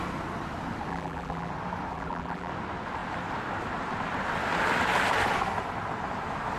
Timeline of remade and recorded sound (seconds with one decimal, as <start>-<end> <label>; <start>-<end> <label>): 0.0-0.9 recorded; 0.9-1.5 remade; 1.5-1.9 recorded; 1.9-2.5 remade; 2.5-6.6 recorded